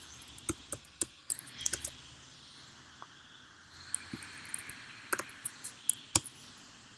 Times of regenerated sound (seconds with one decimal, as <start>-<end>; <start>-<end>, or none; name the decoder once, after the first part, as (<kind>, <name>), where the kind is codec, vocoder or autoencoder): 0.8-1.3 (codec, SNAC)

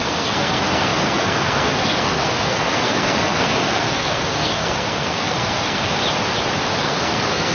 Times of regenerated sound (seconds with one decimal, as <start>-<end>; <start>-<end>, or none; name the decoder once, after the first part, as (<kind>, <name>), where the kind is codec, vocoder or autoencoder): 0.0-6.0 (codec, SNAC); 6.8-7.5

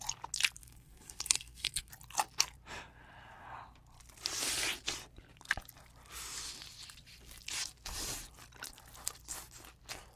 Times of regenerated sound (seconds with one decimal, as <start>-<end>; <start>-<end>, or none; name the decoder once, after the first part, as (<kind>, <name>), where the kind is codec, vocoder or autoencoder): 0.6-1.9 (codec, SNAC)

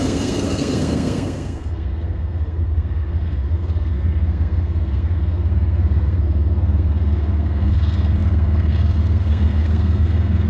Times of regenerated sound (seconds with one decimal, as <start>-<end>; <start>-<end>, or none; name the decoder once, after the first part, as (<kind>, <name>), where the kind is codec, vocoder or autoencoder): 0.0-10.5 (codec, SNAC)

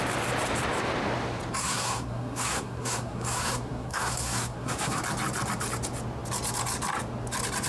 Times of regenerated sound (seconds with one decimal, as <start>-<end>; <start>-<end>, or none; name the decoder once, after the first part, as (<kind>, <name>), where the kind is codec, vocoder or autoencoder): 1.6-5.0 (codec, SNAC)

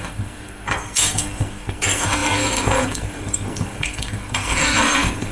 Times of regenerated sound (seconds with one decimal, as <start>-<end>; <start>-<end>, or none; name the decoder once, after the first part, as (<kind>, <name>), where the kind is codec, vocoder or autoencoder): 0.0-5.3 (codec, SNAC)